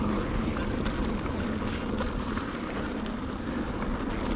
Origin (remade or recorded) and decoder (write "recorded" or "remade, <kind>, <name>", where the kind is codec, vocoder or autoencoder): recorded